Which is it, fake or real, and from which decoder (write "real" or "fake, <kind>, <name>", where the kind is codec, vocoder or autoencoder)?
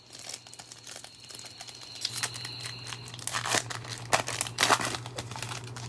real